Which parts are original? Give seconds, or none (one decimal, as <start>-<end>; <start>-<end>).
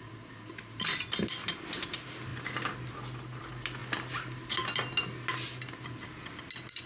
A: 0.0-6.9